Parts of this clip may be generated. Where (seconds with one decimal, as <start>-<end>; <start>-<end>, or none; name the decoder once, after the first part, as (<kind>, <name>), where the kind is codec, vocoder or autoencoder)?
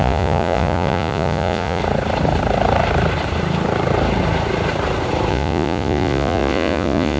0.0-1.8 (vocoder, Vocos); 5.3-7.2